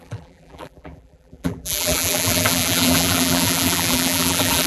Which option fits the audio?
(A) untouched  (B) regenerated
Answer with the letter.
B